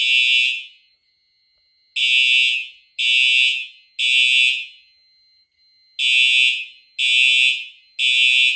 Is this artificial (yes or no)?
no